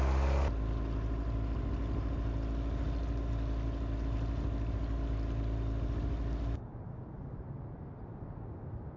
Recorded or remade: recorded